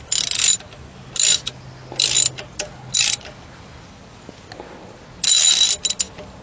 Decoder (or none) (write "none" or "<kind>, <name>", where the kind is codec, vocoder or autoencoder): none